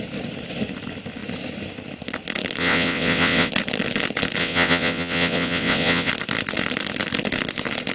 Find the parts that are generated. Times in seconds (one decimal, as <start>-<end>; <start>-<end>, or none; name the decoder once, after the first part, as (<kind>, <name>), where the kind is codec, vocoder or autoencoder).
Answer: 2.6-3.5 (vocoder, WaveNeXt); 4.4-6.1